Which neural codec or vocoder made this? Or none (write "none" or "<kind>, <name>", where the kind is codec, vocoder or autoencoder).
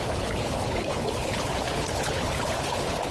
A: codec, HILCodec